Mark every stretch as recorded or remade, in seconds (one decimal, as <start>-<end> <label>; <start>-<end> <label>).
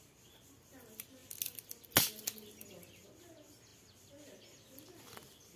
0.0-5.6 recorded